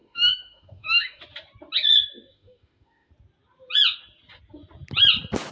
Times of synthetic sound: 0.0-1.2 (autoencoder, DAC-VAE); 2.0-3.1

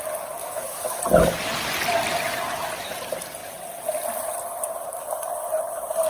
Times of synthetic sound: 0.4-1.0 (autoencoder, DAC-VAE)

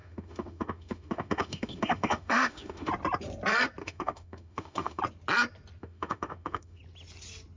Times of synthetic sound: 0.0-2.9 (autoencoder, DAC-VAE); 3.8-5.0; 5.8-6.8

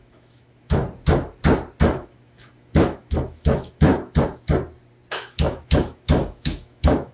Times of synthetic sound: 0.0-0.8 (autoencoder, DAC-VAE); 1.8-3.9; 5.1-7.1

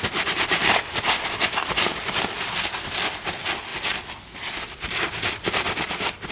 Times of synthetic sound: none

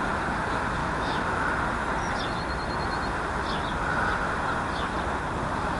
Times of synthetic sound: 0.8-1.5 (autoencoder, DAC-VAE)